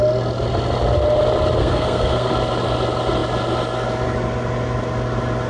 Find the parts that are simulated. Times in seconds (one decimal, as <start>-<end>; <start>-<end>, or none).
1.6-2.3